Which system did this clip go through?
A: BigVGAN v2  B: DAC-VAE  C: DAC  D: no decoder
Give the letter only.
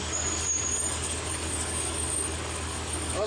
C